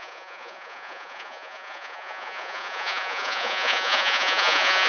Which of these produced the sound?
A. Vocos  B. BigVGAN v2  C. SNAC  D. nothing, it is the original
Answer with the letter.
A